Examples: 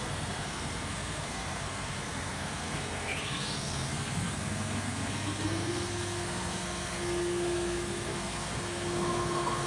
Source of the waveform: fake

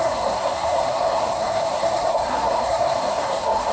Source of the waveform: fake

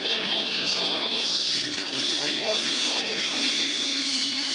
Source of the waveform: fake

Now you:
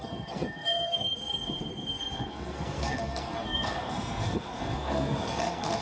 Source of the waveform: fake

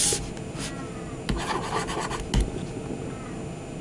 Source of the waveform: real